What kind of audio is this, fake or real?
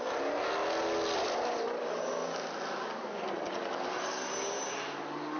real